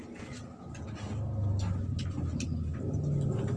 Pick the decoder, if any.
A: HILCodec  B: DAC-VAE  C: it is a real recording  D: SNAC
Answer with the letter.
C